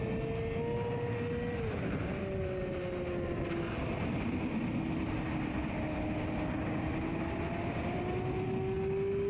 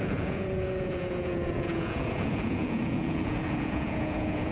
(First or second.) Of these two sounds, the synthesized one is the second